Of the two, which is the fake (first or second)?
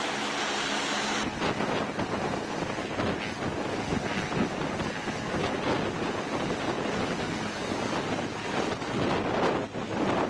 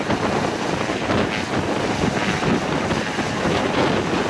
second